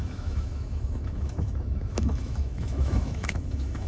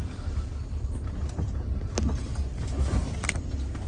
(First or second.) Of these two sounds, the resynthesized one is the first